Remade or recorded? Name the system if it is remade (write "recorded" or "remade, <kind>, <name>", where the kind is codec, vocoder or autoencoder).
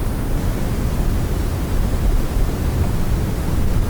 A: remade, vocoder, BigVGAN v2